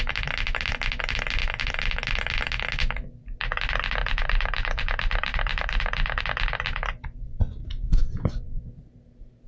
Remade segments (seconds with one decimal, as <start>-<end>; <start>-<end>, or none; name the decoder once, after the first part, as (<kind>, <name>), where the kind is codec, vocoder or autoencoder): 4.0-6.2 (vocoder, BigVGAN v2)